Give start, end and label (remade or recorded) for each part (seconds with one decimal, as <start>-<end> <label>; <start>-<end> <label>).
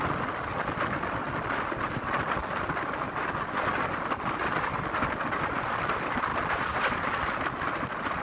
0.0-8.2 recorded